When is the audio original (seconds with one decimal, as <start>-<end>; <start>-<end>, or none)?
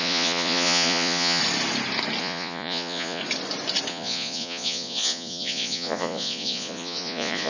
1.4-2.2; 3.2-3.9